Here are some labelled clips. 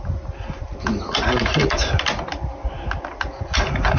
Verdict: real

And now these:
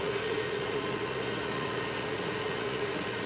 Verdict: fake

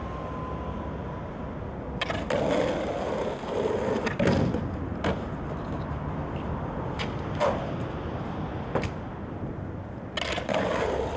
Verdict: real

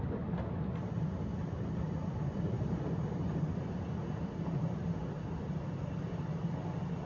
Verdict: real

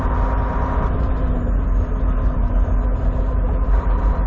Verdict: real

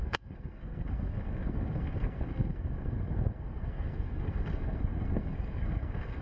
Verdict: fake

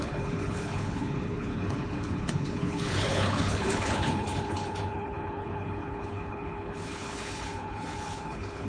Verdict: fake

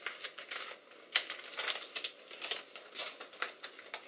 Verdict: real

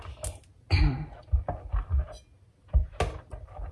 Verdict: real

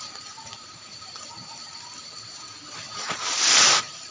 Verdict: fake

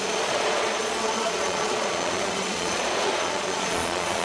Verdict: fake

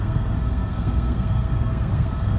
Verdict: fake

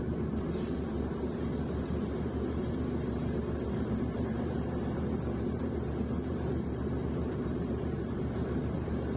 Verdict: fake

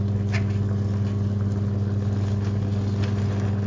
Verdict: real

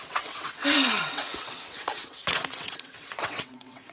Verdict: fake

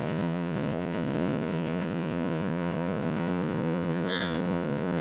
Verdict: fake